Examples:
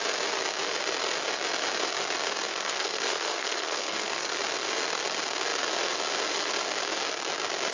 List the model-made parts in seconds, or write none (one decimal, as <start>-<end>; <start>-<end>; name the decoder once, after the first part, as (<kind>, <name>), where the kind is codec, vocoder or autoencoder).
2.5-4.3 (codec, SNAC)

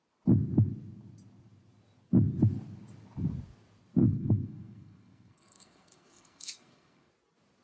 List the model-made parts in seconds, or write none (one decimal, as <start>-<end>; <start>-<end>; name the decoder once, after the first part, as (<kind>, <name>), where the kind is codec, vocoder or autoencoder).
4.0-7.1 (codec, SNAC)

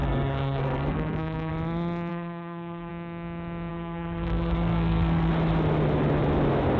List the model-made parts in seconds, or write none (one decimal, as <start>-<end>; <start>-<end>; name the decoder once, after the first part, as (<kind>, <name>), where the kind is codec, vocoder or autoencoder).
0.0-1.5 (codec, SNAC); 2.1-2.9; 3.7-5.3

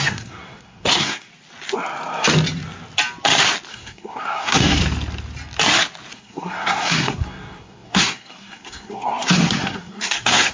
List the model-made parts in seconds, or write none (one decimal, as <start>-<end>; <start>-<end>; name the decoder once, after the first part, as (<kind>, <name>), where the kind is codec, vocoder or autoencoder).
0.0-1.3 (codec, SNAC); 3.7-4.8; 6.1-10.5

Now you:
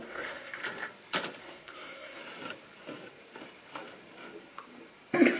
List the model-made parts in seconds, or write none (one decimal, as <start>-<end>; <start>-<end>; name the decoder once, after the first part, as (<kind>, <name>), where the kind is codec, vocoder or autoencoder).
0.0-0.6 (codec, SNAC); 1.4-2.2

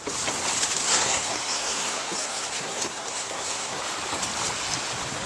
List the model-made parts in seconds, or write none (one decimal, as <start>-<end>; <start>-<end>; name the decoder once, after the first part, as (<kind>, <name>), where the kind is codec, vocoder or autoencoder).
0.8-3.8 (codec, SNAC)